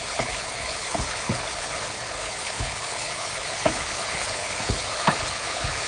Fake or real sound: fake